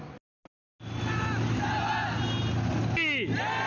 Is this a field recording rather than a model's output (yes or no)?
yes